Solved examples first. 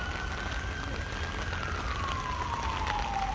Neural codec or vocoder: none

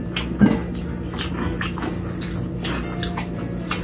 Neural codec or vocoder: none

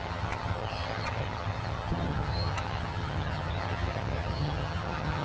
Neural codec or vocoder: vocoder, HiFi-GAN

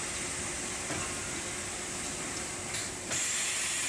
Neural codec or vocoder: none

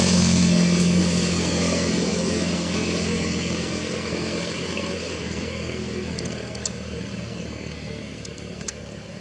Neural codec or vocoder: codec, SNAC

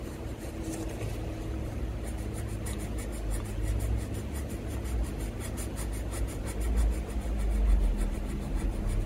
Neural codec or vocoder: none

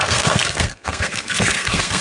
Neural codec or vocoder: codec, SNAC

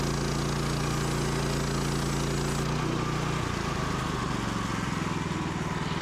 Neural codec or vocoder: none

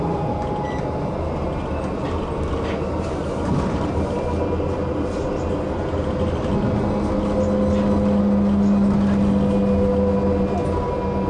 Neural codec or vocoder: none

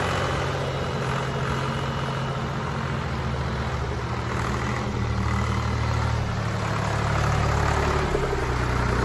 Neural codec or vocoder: none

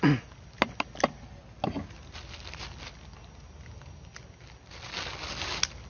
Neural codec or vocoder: none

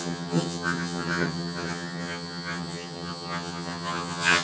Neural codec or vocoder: vocoder, HiFi-GAN